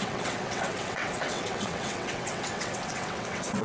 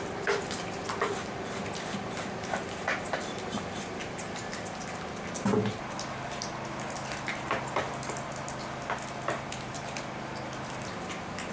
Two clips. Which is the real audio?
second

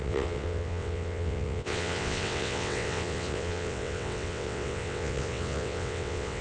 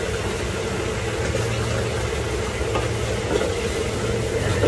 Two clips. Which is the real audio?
second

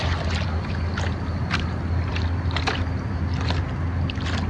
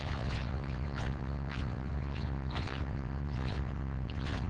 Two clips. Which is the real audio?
first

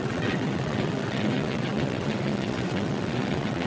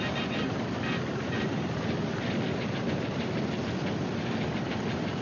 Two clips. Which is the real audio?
second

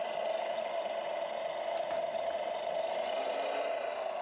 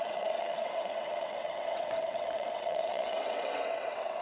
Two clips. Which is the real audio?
first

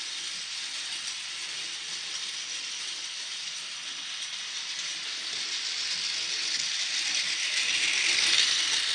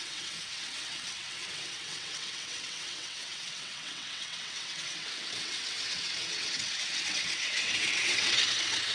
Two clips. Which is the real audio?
first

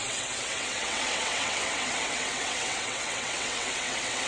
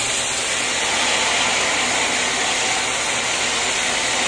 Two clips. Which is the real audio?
second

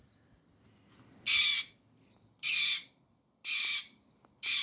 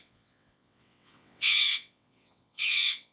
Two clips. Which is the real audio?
first